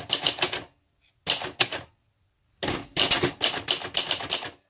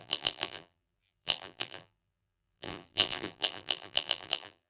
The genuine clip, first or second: first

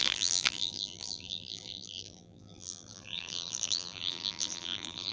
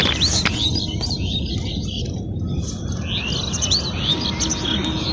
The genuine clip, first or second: second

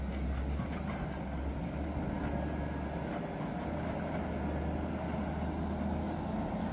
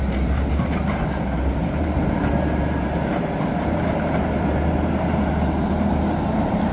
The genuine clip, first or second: first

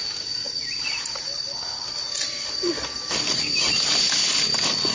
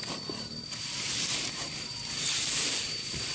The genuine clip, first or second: first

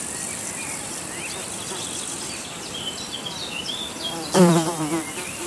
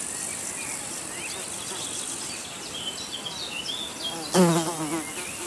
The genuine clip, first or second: second